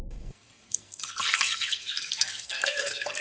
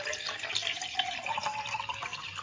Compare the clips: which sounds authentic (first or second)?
second